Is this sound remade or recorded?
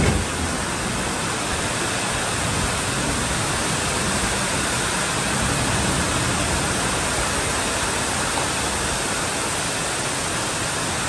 recorded